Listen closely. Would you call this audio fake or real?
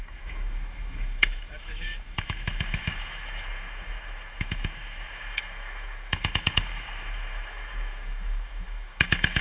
fake